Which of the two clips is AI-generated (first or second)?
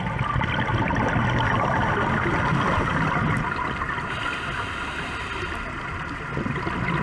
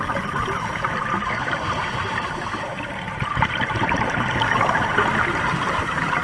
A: second